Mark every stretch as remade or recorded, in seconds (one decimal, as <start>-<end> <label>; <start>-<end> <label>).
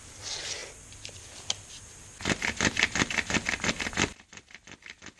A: 0.0-5.2 recorded